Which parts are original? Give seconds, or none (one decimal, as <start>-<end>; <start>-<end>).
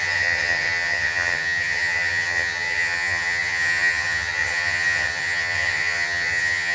none